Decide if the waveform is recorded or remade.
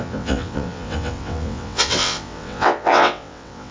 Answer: remade